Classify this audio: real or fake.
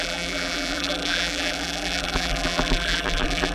fake